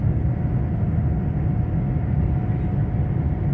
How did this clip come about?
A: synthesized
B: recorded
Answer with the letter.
B